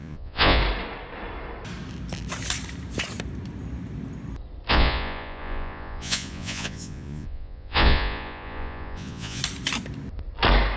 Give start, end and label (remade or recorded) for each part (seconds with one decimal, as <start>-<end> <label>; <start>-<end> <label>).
0.0-0.6 remade; 0.6-4.7 recorded; 4.7-9.4 remade; 9.4-10.8 recorded